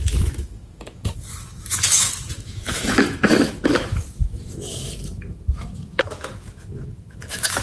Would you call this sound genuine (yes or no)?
no